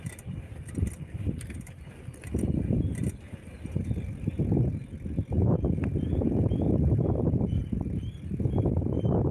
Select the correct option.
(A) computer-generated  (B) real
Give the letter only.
B